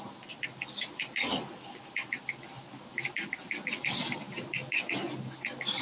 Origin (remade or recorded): recorded